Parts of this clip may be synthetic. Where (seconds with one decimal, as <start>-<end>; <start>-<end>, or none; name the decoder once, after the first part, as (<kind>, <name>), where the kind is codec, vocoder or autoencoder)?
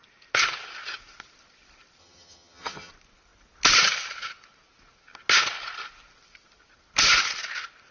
2.0-2.9 (vocoder, HiFi-GAN)